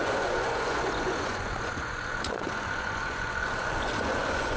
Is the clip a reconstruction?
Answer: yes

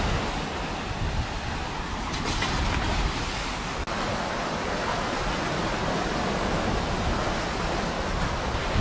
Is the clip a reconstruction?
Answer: no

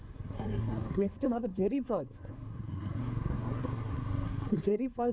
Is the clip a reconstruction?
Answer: yes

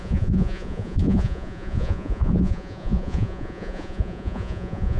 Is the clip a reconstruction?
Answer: yes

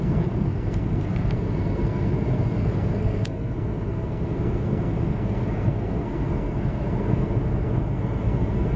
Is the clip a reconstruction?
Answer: yes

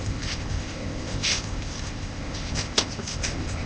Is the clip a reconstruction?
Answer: yes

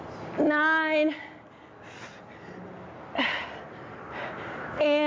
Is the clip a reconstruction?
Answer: no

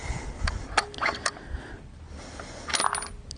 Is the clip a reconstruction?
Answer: no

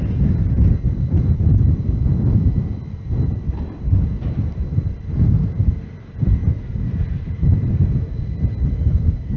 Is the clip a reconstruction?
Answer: yes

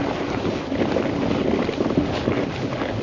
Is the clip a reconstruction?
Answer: no